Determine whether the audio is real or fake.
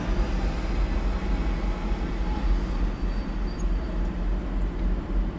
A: real